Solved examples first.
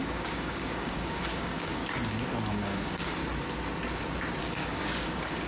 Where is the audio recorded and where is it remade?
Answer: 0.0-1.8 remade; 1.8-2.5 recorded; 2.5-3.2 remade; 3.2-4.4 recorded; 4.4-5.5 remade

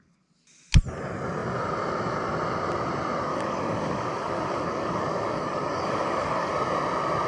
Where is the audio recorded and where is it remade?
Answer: 0.0-3.3 recorded; 3.3-6.5 remade; 6.5-7.3 recorded

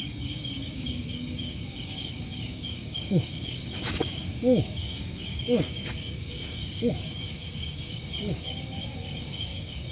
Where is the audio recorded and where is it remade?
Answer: 0.0-9.9 remade